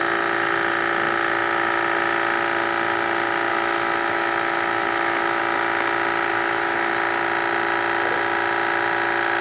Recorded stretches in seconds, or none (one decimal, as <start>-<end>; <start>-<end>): 0.0-3.5; 5.4-6.3; 6.9-9.4

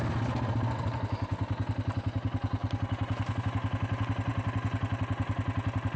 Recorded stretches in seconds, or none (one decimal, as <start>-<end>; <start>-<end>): 0.0-2.6; 3.4-6.0

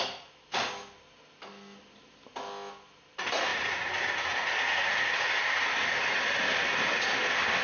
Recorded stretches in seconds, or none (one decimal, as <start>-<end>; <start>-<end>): 0.0-3.5; 5.0-7.6